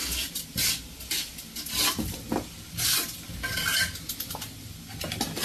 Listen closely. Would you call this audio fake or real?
real